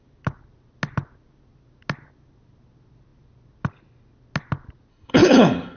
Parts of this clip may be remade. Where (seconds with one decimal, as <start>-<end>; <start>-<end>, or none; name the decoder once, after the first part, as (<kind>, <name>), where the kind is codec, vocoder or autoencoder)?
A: 4.9-5.8 (codec, HILCodec)